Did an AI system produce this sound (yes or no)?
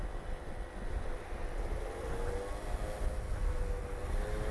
no